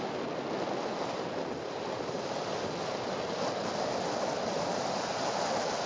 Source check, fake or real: real